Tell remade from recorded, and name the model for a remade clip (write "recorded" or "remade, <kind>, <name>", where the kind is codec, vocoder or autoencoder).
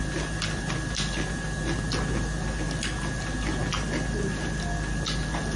recorded